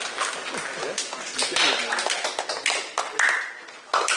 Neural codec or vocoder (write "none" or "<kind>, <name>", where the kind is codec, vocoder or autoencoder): none